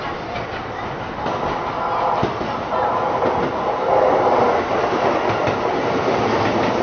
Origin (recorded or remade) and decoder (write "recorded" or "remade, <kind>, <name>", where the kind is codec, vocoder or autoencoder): recorded